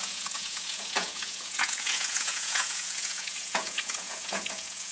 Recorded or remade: remade